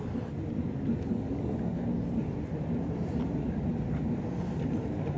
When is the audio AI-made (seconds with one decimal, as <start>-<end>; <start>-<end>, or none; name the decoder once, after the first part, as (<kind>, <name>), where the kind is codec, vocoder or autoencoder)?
none